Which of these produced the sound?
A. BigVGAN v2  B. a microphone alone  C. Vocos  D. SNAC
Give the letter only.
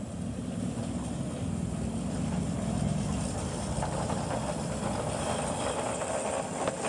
B